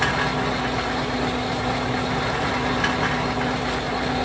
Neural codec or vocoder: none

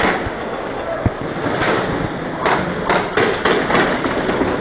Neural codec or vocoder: none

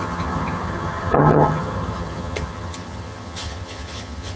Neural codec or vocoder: vocoder, HiFi-GAN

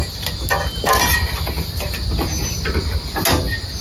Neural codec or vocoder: none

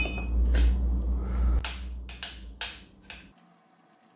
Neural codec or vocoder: none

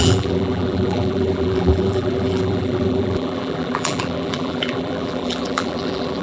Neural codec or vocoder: vocoder, BigVGAN v2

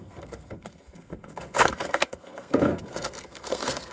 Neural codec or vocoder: codec, SNAC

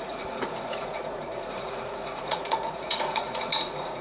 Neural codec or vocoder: vocoder, Vocos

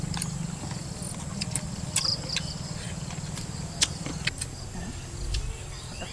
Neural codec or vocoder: none